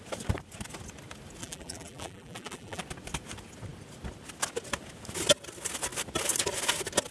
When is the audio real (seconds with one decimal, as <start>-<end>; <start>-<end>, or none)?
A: 0.0-1.4; 2.8-7.1